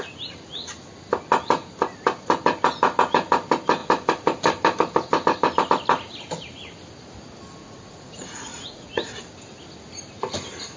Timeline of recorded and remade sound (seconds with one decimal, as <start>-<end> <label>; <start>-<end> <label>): 0.0-7.6 recorded; 7.6-9.2 remade; 9.2-10.8 recorded